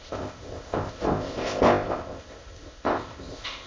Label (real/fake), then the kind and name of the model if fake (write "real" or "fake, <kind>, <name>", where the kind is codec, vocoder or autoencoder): fake, codec, ZipCodec